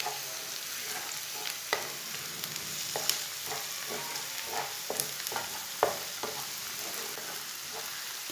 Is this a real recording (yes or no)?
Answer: yes